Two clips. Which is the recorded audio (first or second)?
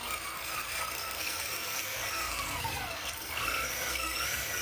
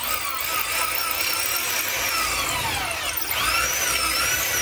second